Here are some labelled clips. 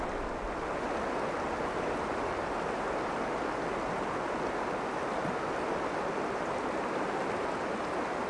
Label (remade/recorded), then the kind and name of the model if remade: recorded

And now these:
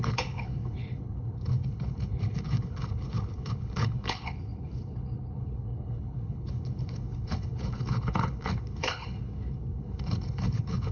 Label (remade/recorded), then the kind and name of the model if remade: remade, codec, HILCodec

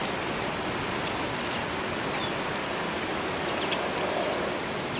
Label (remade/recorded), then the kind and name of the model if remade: recorded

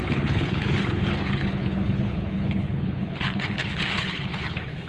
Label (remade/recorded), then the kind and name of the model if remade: remade, codec, HILCodec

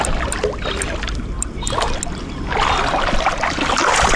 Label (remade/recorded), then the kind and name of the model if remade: recorded